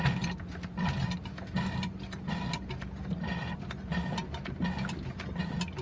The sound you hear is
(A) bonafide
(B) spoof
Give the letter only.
A